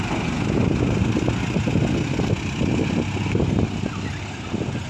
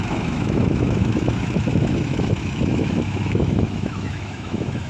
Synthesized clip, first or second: second